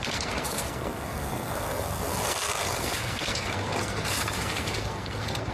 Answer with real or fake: fake